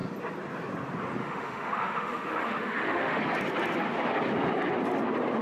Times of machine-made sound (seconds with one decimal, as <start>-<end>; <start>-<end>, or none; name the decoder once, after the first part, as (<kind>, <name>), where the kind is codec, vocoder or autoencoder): 1.2-3.2 (autoencoder, DAC-VAE)